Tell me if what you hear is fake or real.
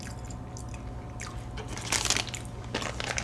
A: real